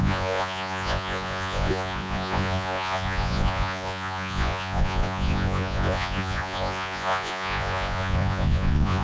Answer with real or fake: fake